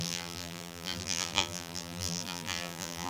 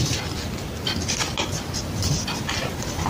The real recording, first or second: second